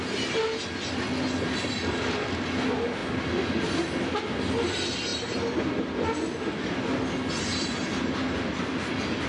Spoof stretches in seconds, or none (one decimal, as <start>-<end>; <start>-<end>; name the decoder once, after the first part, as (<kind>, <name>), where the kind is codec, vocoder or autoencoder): none